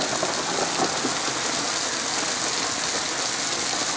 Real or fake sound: real